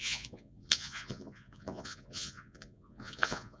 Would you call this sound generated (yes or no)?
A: yes